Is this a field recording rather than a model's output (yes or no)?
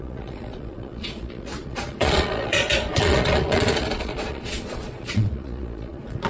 no